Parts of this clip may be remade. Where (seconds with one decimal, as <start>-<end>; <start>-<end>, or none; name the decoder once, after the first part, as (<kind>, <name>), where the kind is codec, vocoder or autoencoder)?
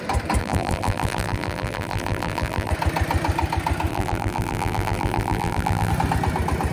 0.4-2.7 (vocoder, BigVGAN v2); 3.9-5.9